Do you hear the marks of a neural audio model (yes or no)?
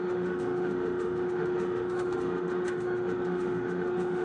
yes